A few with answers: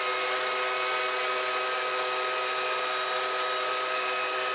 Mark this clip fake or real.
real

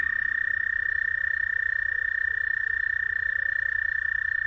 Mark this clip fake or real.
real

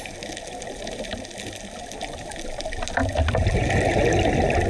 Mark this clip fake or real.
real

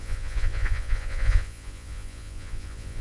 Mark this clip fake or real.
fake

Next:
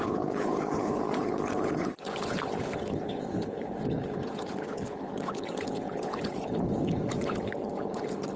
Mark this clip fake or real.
fake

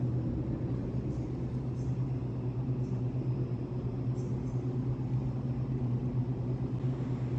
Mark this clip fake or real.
real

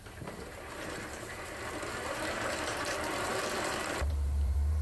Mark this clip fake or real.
fake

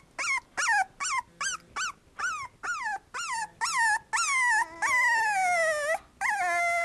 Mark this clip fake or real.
real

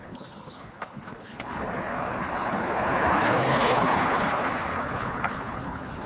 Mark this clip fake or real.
fake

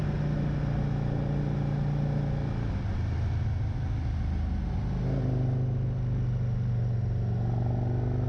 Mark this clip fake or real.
real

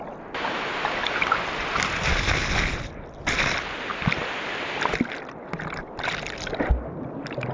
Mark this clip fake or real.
real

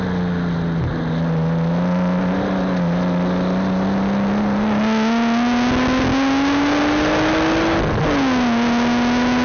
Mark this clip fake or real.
real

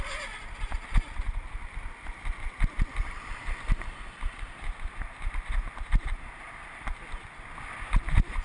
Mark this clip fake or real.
real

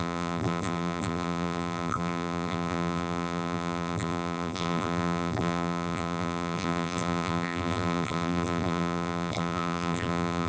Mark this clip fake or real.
fake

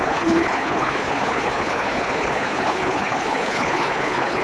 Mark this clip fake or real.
fake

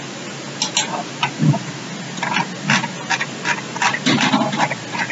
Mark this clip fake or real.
real